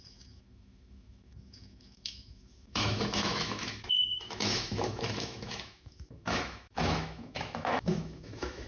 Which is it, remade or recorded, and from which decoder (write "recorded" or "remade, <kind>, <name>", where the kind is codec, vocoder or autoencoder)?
remade, autoencoder, DAC-VAE